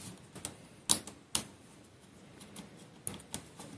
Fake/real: real